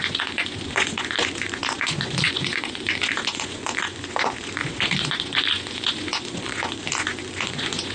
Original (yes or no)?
no